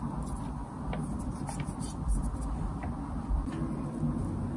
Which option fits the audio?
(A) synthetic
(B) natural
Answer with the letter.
B